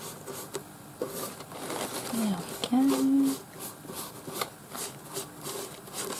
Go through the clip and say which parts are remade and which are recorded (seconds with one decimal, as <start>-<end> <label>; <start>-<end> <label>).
0.0-6.2 recorded

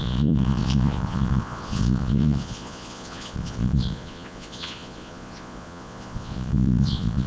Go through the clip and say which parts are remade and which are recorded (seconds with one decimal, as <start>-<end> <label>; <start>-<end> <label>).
0.0-7.3 remade

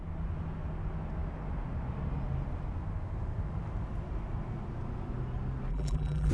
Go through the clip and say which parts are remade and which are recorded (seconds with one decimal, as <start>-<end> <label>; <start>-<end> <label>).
0.0-5.7 recorded; 5.7-6.3 remade

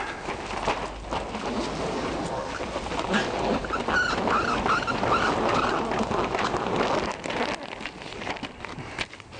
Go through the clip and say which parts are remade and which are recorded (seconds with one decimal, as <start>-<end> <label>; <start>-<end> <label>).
0.0-9.4 recorded